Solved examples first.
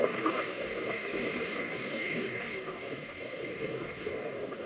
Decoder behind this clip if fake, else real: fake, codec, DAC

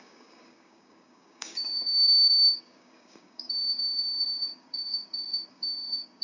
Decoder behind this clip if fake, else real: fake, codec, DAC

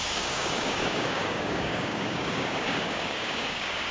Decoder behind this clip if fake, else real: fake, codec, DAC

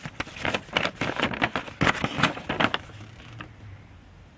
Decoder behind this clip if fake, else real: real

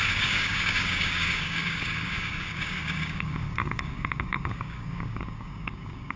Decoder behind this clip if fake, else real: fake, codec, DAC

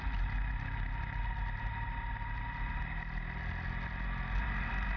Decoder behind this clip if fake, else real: real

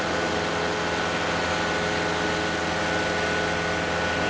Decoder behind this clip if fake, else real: real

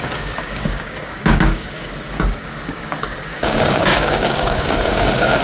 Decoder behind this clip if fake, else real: fake, codec, DAC